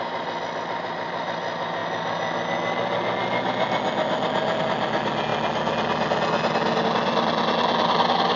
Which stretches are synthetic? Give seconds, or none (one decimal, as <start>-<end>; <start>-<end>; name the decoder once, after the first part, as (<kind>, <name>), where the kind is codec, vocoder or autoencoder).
none